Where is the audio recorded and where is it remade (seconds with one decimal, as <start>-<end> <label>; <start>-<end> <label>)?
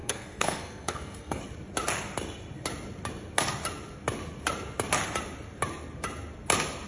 0.0-1.4 remade; 1.4-6.9 recorded